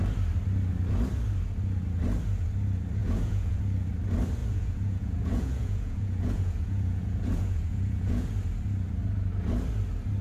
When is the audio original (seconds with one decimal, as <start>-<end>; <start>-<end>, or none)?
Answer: 0.0-3.0; 3.6-4.4; 8.3-10.2